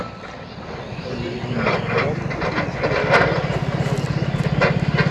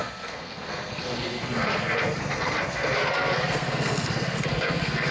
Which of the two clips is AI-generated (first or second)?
second